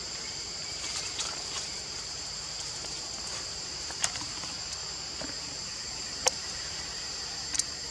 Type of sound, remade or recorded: remade